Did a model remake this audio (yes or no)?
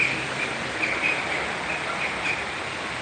no